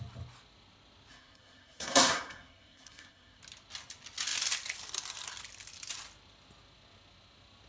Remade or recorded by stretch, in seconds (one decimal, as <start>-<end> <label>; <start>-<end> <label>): 0.0-1.1 recorded; 1.1-3.4 remade; 3.4-7.7 recorded